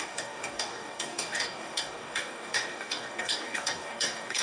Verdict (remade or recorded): remade